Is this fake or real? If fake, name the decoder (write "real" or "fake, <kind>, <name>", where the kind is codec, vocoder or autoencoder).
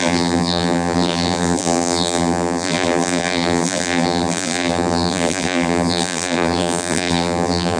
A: fake, vocoder, BigVGAN v2